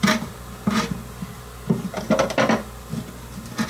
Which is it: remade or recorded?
recorded